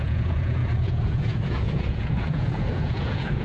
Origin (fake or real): fake